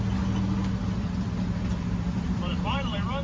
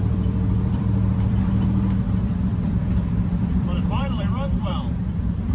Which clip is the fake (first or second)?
second